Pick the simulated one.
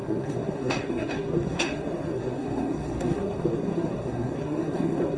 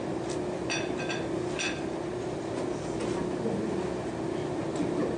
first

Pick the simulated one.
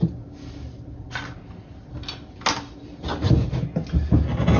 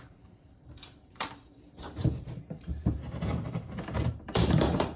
second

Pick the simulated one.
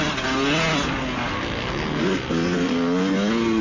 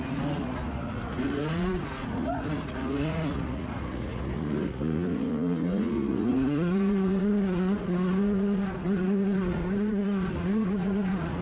second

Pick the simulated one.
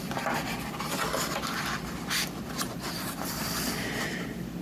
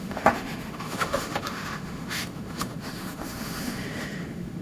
second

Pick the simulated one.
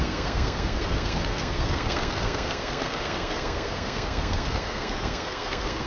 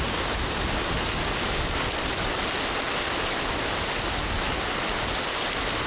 first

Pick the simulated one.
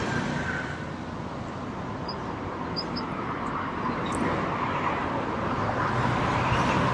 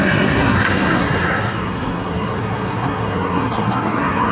second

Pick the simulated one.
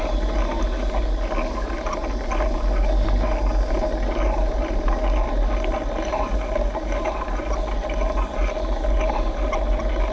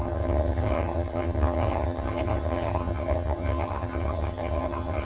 second